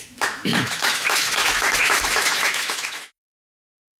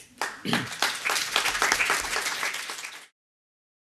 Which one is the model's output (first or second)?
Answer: first